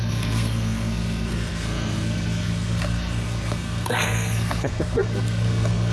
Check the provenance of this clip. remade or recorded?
remade